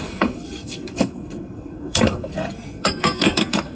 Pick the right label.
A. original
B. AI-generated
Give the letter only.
B